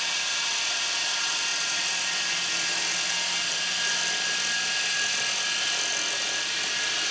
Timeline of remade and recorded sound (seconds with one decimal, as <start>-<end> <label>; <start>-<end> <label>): 0.0-7.1 recorded